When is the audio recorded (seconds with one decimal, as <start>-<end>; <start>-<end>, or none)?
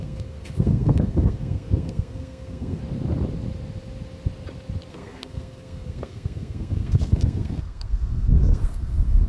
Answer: 2.8-4.9